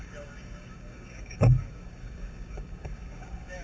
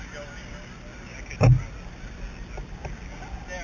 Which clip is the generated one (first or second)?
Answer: first